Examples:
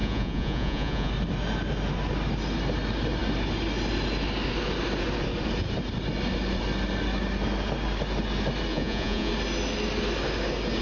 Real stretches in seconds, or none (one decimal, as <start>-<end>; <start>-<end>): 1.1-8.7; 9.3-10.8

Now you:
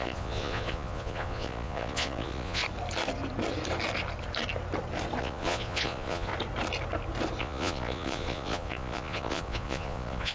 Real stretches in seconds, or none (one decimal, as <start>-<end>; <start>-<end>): 2.6-5.2; 6.3-7.4

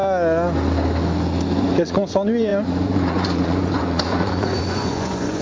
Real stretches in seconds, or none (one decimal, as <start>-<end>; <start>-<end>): 0.0-1.6

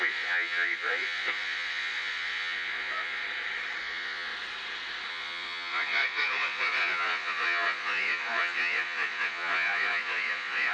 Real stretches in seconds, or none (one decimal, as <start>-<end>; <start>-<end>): 3.2-3.8; 4.3-5.1

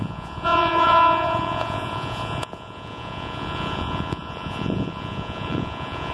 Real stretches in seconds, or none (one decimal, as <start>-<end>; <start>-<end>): none

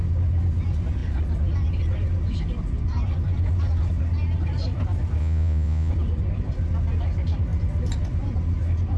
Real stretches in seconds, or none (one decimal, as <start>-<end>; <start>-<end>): 0.0-5.2; 5.9-9.0